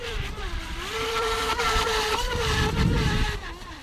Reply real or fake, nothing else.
fake